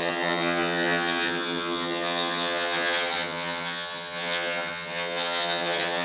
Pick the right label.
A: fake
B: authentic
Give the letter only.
A